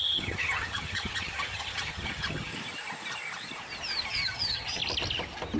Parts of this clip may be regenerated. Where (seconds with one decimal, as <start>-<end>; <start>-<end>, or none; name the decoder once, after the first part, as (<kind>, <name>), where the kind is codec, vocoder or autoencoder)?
0.0-2.5 (vocoder, HiFi-GAN); 4.1-4.8